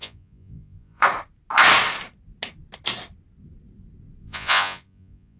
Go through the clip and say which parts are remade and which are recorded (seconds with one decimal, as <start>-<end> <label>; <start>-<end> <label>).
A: 0.0-1.0 remade; 1.0-4.2 recorded; 4.2-5.4 remade

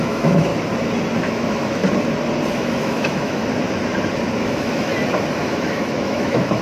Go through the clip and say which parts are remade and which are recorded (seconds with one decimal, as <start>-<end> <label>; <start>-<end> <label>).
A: 0.0-0.5 remade; 0.5-1.2 recorded; 1.2-1.8 remade; 1.8-2.5 recorded; 2.5-3.4 remade; 3.4-4.4 recorded; 4.4-4.9 remade; 4.9-5.4 recorded; 5.4-6.6 remade

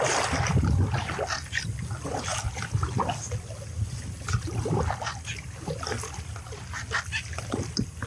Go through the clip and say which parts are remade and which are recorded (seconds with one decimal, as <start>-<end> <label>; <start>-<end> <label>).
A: 0.0-8.1 recorded

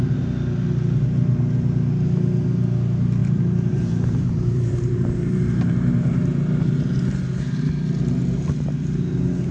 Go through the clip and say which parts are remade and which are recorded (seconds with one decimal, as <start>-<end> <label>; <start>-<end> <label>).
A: 0.0-3.2 recorded; 3.2-7.7 remade; 7.7-9.5 recorded

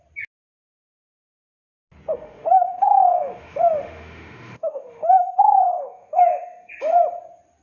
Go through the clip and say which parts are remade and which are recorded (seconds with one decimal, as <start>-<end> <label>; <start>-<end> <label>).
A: 0.0-2.1 recorded; 2.1-6.7 remade; 6.7-7.6 recorded

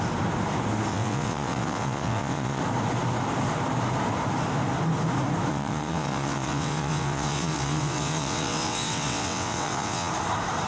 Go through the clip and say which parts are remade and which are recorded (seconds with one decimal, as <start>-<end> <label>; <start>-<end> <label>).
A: 0.0-0.9 recorded; 0.9-2.6 remade; 2.6-5.5 recorded; 5.5-10.1 remade; 10.1-10.7 recorded